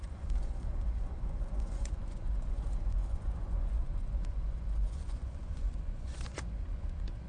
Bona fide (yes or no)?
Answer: no